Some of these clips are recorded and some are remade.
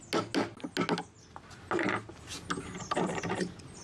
recorded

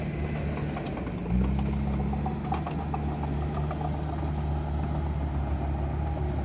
recorded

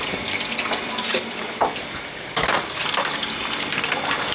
recorded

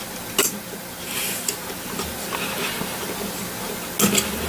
recorded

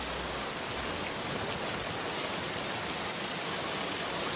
recorded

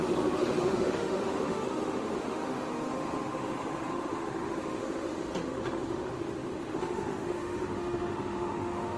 remade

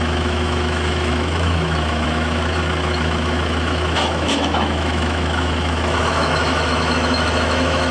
remade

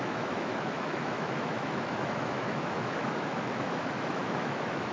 remade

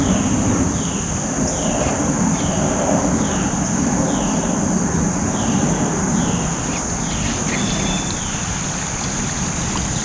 recorded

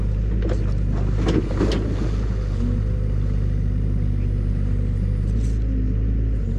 recorded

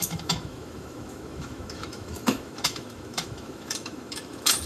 remade